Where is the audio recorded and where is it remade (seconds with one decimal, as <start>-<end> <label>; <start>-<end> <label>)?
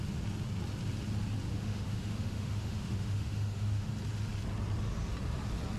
0.0-1.5 recorded; 1.5-3.9 remade; 3.9-5.8 recorded